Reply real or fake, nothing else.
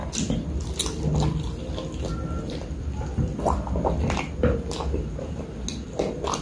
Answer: real